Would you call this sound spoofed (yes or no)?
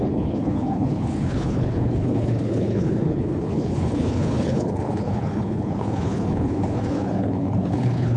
yes